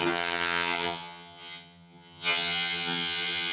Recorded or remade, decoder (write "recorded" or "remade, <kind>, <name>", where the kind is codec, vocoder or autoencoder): remade, vocoder, HiFi-GAN